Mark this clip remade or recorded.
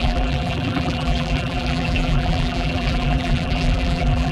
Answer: remade